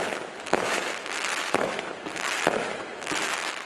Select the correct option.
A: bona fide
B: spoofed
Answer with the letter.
B